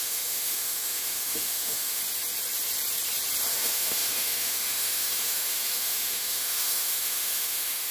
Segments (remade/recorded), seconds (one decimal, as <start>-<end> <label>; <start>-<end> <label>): 0.0-2.0 remade; 2.0-3.5 recorded; 3.5-7.9 remade